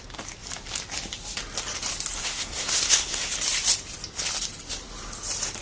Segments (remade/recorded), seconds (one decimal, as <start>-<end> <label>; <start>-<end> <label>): 0.0-2.2 recorded; 2.2-3.3 remade; 3.3-5.6 recorded

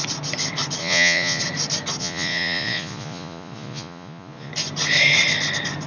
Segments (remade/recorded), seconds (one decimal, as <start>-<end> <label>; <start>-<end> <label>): 0.0-0.8 recorded; 0.8-1.4 remade; 1.4-2.0 recorded; 2.0-4.5 remade; 4.5-5.9 recorded

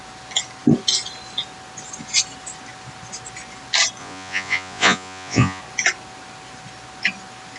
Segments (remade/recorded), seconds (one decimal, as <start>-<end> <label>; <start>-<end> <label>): 0.0-4.0 recorded; 4.0-5.6 remade; 5.6-7.6 recorded

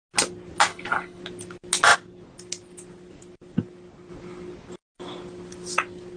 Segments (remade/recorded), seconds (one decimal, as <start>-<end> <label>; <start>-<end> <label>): 0.0-0.7 recorded; 0.7-1.2 remade; 1.2-6.2 recorded

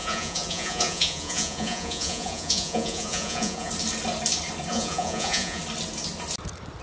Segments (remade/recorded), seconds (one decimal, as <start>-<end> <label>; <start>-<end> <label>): 0.0-3.7 remade; 3.7-4.7 recorded; 4.7-5.6 remade; 5.6-6.8 recorded

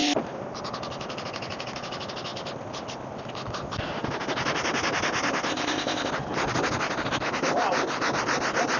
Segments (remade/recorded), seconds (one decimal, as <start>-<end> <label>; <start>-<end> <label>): 0.0-5.5 recorded; 5.5-6.1 remade; 6.1-8.8 recorded

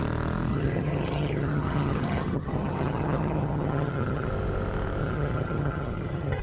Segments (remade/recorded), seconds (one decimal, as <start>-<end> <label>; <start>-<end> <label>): 0.0-0.5 recorded; 0.5-4.3 remade; 4.3-5.0 recorded; 5.0-6.4 remade

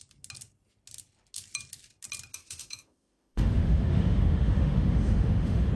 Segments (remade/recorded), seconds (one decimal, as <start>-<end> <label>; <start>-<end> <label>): 0.0-2.3 recorded; 2.3-5.7 remade